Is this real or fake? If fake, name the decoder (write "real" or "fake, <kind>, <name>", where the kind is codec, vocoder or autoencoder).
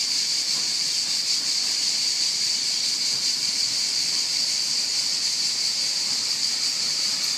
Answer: fake, vocoder, BigVGAN v2